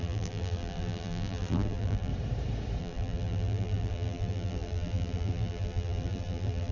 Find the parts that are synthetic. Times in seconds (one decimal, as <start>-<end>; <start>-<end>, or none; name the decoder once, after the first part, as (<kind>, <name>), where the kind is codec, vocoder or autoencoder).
0.0-2.1 (vocoder, BigVGAN v2); 2.8-6.7